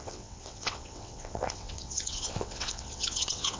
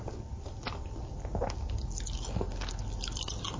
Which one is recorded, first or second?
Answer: second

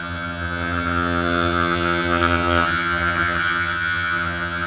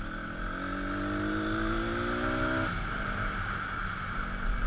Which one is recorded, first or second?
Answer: second